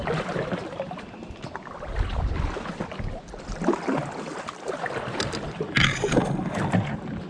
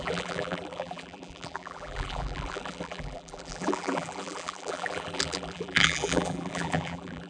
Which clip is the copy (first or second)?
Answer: second